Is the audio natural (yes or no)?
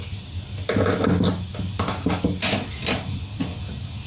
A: yes